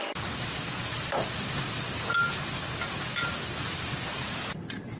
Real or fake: real